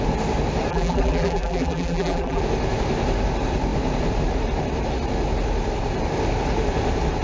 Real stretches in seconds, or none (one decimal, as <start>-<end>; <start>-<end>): 0.0-0.7; 2.4-7.2